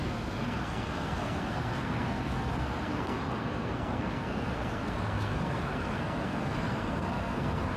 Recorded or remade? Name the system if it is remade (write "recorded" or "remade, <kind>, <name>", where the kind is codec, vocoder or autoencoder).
remade, codec, SNAC